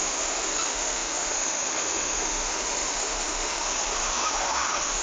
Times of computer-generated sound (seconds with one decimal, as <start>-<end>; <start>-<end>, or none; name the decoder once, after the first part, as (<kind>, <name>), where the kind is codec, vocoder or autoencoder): 0.0-5.0 (autoencoder, DAC-VAE)